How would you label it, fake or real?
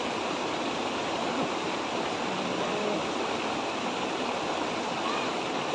fake